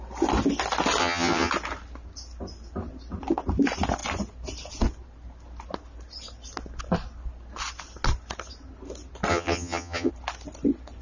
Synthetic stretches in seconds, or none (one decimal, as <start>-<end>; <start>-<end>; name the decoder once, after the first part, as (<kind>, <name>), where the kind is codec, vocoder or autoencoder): 1.0-1.5 (vocoder, HiFi-GAN); 9.3-10.1